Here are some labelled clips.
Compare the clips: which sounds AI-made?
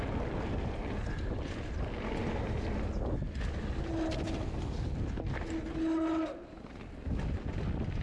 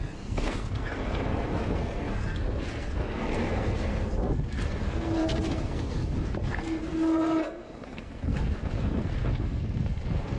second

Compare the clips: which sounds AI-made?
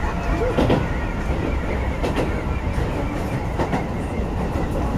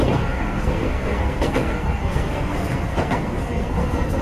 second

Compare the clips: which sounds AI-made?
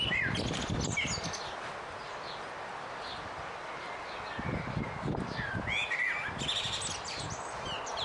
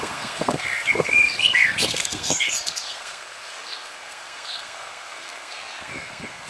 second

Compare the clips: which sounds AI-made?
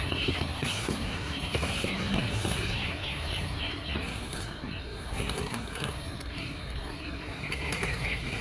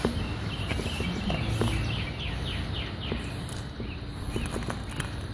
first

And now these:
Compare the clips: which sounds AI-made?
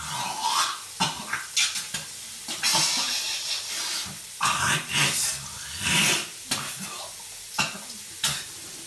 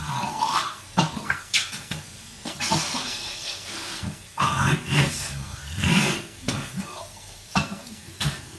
second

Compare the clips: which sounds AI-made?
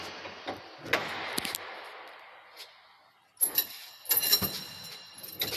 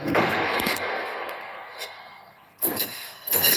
second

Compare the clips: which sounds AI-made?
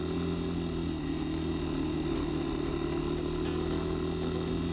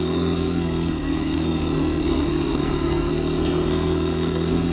second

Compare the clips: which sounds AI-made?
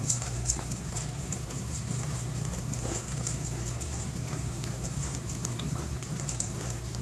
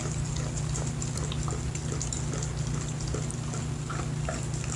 first